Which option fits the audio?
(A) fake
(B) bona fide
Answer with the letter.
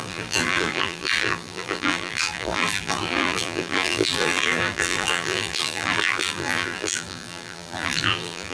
A